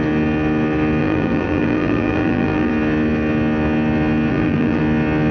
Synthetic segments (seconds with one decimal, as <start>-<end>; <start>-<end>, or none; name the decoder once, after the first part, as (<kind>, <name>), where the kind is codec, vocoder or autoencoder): 1.0-2.7 (vocoder, BigVGAN v2); 4.3-4.8

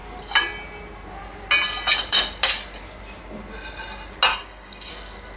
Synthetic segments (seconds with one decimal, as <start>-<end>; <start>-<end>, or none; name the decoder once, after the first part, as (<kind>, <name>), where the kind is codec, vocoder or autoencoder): 4.3-4.9 (codec, DAC)

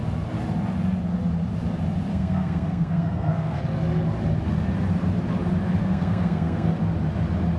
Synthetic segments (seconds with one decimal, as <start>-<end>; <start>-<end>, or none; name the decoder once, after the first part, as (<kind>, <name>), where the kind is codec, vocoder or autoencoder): 2.1-3.6 (codec, SNAC); 5.8-6.8

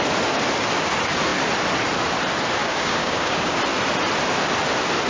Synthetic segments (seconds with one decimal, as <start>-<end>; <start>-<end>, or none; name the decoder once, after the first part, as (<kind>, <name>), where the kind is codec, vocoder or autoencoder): 2.6-3.6 (codec, DAC)

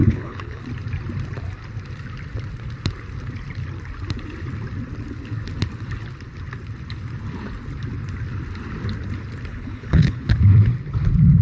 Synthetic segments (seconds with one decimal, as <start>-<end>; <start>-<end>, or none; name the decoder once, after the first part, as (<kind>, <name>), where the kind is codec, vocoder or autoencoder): 0.0-0.6 (codec, HILCodec); 9.5-10.3

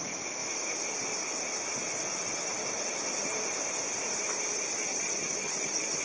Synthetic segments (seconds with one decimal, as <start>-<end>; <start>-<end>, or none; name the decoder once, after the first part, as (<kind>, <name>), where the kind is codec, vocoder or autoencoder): 4.9-6.0 (vocoder, HiFi-GAN)

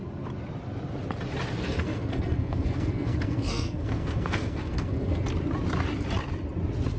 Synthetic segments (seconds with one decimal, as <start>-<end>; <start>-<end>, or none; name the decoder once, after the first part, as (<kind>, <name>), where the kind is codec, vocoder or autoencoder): 1.6-5.2 (codec, SNAC)